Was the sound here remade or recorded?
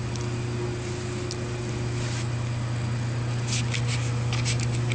recorded